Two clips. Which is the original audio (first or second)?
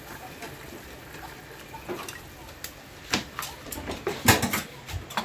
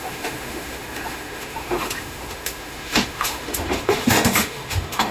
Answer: first